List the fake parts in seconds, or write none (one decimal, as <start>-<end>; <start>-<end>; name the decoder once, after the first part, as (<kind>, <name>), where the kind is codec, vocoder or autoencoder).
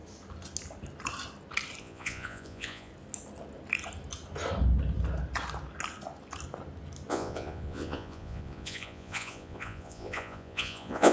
1.8-2.9 (vocoder, Vocos); 7.1-11.1